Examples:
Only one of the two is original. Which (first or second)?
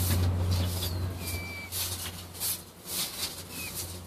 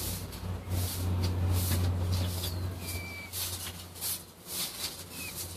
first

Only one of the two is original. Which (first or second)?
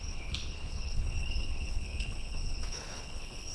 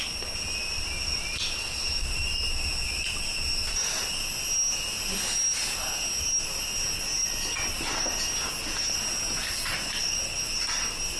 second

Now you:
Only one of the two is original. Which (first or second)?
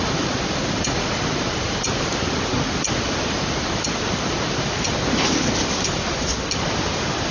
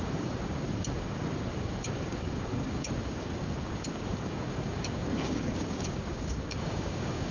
first